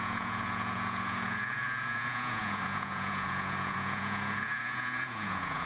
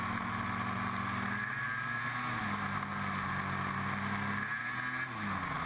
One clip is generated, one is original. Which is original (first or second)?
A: second